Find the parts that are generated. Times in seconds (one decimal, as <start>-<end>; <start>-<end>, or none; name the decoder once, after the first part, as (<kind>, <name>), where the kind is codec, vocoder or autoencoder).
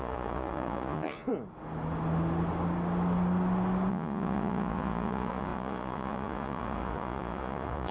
0.0-1.3 (vocoder, Vocos); 3.9-7.9